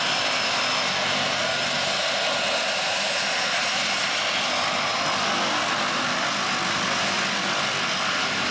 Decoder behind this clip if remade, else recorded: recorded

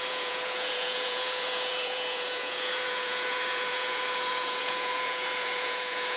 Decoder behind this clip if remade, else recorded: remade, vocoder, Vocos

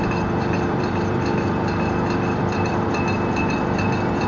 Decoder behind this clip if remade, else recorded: remade, vocoder, BigVGAN v2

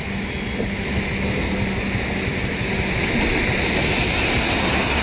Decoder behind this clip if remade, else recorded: recorded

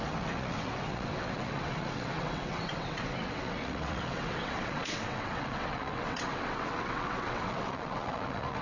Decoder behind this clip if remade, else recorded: remade, vocoder, WaveNeXt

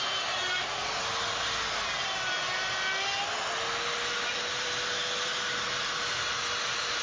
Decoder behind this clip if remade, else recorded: recorded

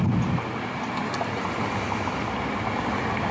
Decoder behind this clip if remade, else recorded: recorded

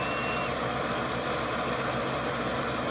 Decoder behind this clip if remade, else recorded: recorded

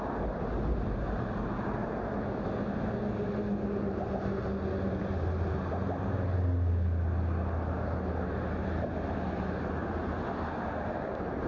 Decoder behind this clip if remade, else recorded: recorded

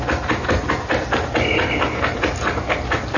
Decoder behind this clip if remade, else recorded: recorded